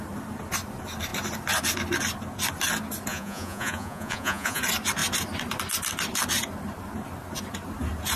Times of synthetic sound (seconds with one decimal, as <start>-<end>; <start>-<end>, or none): 3.1-4.6